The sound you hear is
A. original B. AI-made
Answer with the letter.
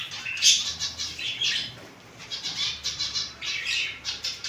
B